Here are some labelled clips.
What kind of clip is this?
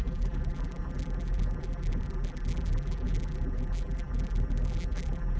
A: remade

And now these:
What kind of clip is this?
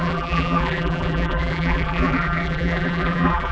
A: remade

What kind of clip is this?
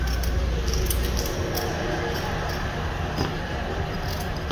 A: recorded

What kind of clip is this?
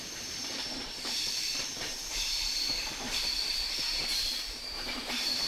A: remade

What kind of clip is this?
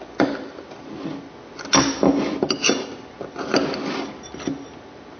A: recorded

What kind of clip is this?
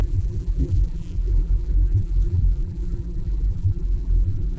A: remade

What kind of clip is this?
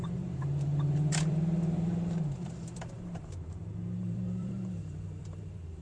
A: remade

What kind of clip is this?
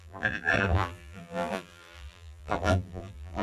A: remade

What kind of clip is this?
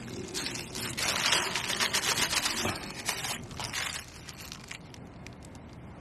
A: recorded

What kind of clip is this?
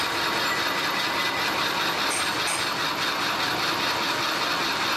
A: recorded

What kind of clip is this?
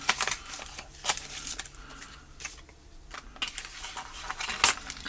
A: recorded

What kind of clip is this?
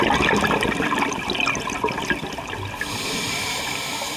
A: recorded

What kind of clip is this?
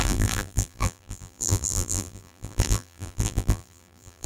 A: remade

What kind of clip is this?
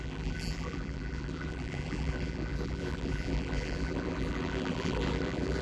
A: remade